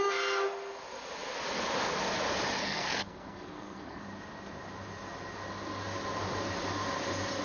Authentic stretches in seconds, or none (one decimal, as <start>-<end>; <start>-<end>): 0.0-2.6; 4.0-7.4

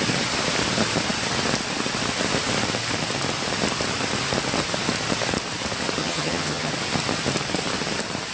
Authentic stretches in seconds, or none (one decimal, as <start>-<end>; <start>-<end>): 0.0-6.0; 6.7-8.3

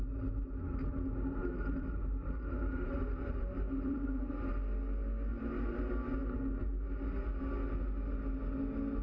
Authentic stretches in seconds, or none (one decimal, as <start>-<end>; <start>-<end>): 0.0-1.4; 4.3-5.3; 5.9-9.0

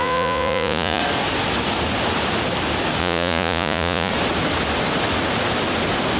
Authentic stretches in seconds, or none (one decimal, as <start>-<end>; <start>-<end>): 1.0-3.0; 4.1-6.2